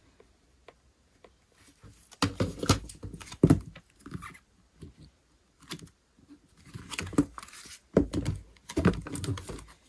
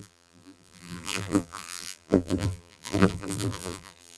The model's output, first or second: second